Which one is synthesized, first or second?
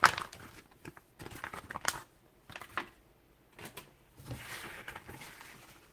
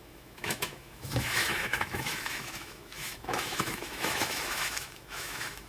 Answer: second